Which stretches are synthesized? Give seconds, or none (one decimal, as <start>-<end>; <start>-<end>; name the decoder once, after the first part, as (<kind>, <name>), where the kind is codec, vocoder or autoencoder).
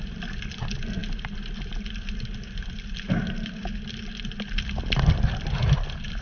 none